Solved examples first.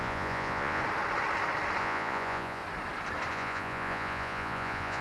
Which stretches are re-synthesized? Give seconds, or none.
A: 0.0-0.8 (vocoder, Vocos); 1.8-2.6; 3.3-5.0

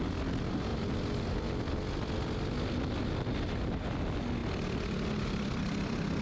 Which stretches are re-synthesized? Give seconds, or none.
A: none

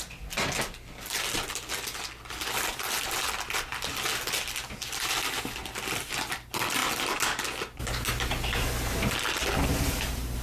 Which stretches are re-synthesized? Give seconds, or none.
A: none

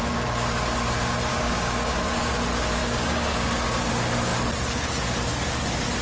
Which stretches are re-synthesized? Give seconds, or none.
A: 1.3-2.3 (codec, DAC); 2.8-3.9

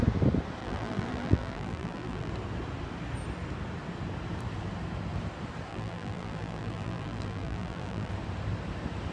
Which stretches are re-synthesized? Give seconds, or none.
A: 0.6-2.3 (vocoder, BigVGAN v2); 5.7-8.1